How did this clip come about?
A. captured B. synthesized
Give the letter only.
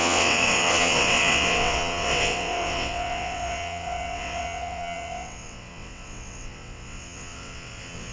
B